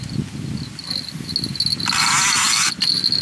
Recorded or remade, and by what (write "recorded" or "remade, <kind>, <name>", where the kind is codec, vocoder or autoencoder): recorded